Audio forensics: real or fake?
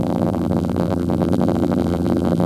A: fake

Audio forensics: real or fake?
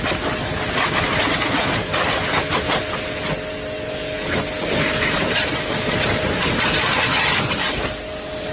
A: real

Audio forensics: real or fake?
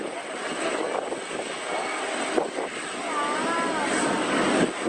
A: real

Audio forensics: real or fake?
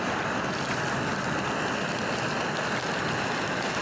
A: real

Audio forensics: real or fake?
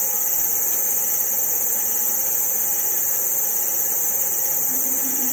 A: fake